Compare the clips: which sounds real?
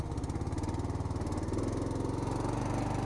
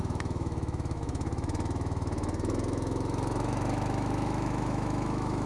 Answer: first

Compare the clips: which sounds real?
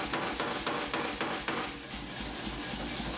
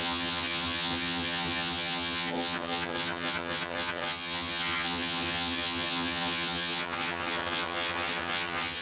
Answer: first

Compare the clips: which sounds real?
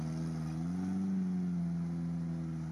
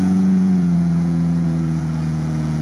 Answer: first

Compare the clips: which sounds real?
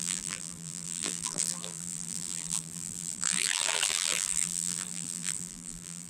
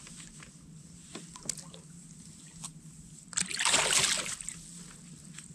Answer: second